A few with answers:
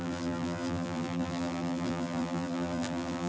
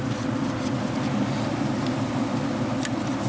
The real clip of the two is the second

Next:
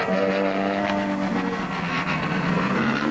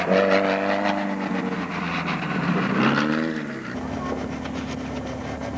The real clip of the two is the second